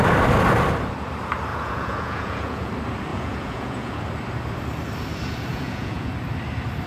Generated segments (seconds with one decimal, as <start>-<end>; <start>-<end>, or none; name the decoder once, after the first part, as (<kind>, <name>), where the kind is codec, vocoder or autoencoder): 1.5-2.7 (vocoder, Vocos); 3.1-4.0; 5.5-6.1